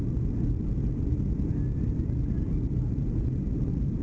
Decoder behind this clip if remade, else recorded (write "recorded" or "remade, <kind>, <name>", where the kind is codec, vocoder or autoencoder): recorded